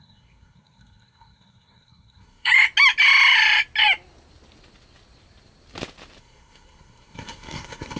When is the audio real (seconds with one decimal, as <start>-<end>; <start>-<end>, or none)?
2.5-6.2